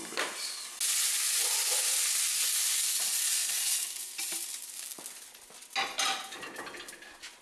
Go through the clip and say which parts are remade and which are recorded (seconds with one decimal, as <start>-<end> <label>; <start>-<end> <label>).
0.0-3.4 recorded; 3.4-4.8 remade; 4.8-7.4 recorded